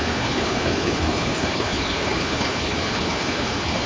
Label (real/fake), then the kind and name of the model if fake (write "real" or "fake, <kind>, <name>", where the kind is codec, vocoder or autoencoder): fake, codec, HILCodec